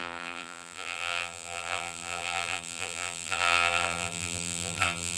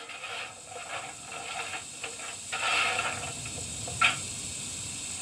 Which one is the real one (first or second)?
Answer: second